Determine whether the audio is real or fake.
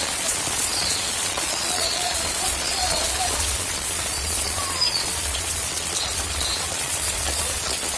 fake